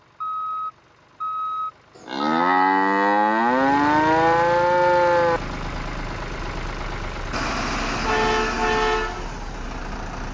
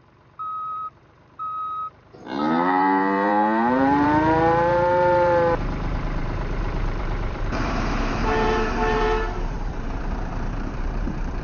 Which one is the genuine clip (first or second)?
first